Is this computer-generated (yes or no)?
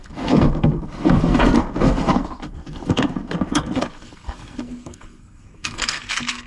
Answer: yes